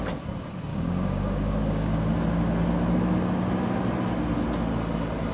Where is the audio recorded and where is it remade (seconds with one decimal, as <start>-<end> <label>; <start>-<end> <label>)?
0.0-0.7 recorded; 0.7-2.1 remade; 2.1-5.3 recorded